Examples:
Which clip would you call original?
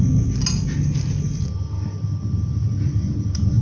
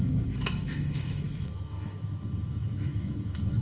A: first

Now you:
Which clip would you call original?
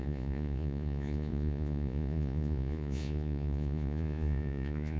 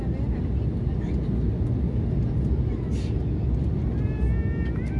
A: second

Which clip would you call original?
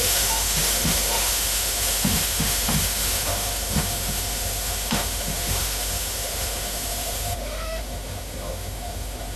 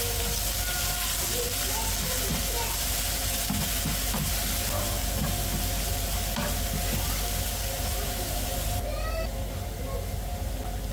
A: second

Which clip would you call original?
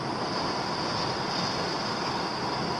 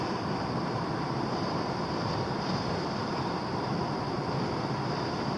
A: first